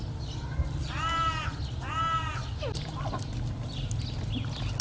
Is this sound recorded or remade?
recorded